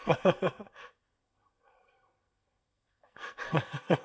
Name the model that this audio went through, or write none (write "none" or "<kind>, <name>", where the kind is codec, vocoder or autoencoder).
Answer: codec, SNAC